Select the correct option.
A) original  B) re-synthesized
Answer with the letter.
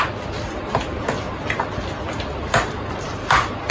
A